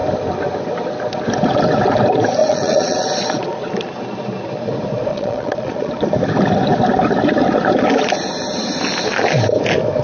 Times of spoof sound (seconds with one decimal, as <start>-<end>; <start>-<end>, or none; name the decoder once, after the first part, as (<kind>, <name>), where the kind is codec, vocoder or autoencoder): 2.4-3.7 (vocoder, Vocos); 5.1-5.9